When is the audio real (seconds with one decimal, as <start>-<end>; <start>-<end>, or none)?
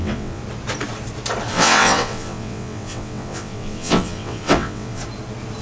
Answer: 0.4-1.5; 5.0-5.6